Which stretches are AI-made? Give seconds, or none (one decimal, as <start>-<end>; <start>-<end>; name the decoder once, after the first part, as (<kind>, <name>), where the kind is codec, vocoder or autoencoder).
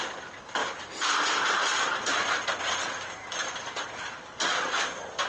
none